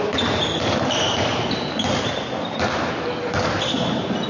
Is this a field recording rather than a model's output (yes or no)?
yes